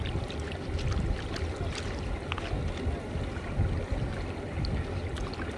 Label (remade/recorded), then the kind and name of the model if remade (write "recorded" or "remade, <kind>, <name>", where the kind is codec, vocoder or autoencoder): recorded